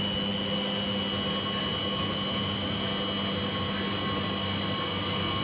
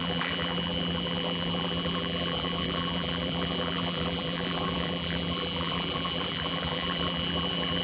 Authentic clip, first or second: first